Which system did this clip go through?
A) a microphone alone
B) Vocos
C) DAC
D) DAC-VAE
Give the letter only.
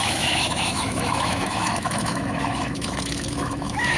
D